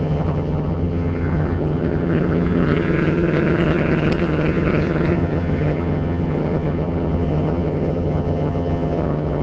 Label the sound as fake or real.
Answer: fake